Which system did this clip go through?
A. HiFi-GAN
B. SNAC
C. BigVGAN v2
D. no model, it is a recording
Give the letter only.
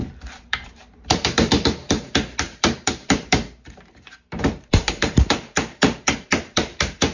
C